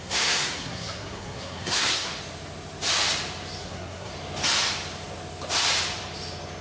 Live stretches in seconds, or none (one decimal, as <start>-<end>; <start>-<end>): 2.1-3.6; 4.1-6.6